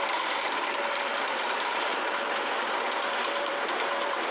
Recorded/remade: remade